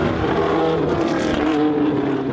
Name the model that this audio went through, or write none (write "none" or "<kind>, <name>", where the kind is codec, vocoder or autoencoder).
none